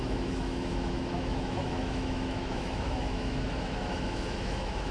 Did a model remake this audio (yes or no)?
yes